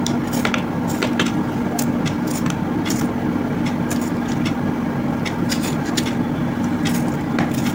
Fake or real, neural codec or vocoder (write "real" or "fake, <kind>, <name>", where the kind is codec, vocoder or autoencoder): fake, vocoder, BigVGAN v2